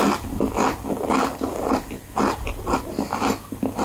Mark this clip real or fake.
real